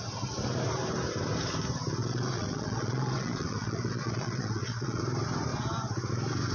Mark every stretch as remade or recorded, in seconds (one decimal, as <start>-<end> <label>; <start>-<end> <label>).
0.0-2.0 recorded; 2.0-5.0 remade; 5.0-6.5 recorded